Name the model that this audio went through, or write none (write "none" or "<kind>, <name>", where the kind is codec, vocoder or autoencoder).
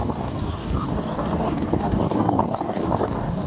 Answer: codec, DAC